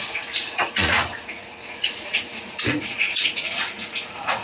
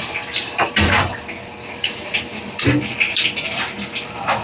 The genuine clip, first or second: second